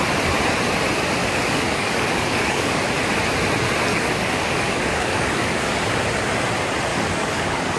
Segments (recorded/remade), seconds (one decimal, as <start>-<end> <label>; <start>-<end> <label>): 0.0-1.2 recorded; 1.2-2.8 remade; 2.8-3.9 recorded; 3.9-6.0 remade; 6.0-6.9 recorded; 6.9-7.8 remade